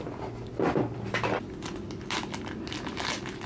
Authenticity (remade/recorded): recorded